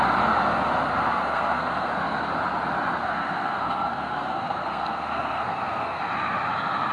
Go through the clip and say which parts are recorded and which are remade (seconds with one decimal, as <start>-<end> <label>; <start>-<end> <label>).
0.0-0.9 recorded; 0.9-1.9 remade; 1.9-3.0 recorded; 3.0-6.0 remade; 6.0-6.9 recorded